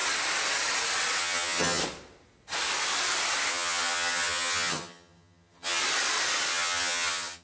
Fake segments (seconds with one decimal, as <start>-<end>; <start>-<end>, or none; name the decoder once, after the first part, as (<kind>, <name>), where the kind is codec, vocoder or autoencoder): 1.2-1.8 (vocoder, HiFi-GAN); 3.5-5.8; 6.5-7.4